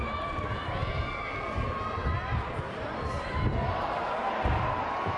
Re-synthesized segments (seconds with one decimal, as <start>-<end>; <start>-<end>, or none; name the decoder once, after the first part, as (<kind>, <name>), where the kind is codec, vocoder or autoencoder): 0.0-0.8 (vocoder, BigVGAN v2); 1.3-5.2